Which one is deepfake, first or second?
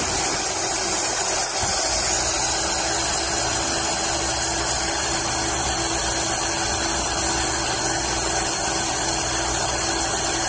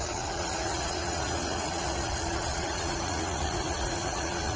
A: second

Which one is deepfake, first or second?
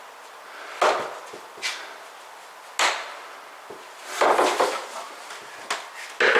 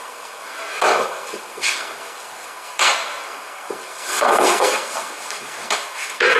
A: second